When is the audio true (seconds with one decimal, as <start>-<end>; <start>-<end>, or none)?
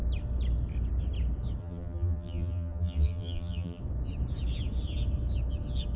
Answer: 0.0-1.6; 3.8-6.0